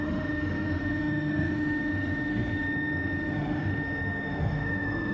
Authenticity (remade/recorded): remade